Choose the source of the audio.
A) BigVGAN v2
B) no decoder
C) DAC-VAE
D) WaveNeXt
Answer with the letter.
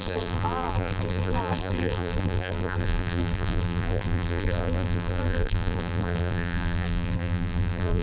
A